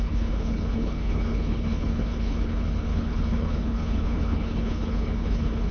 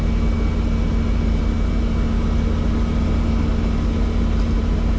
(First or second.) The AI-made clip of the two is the first